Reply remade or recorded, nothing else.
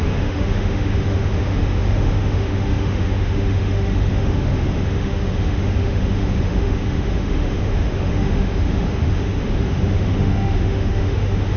remade